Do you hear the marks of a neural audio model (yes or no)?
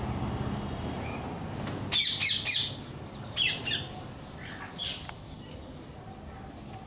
no